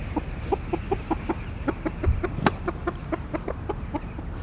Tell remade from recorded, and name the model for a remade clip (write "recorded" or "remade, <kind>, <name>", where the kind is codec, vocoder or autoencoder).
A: recorded